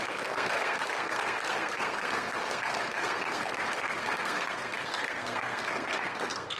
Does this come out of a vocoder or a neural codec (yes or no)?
yes